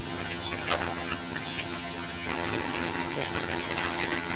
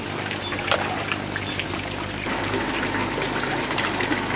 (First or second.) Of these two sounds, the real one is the second